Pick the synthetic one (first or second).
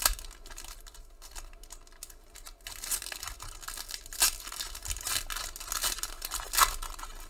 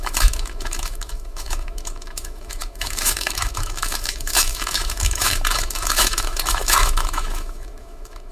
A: second